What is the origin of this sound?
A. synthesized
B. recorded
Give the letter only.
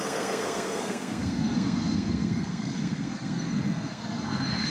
A